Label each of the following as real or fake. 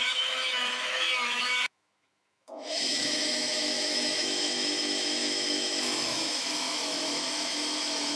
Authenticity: fake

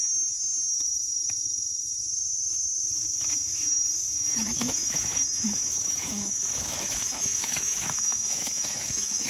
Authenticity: fake